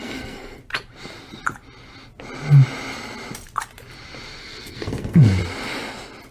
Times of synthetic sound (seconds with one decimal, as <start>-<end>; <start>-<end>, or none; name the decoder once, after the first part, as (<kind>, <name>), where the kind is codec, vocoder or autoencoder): 0.0-0.6 (codec, SNAC); 4.4-5.4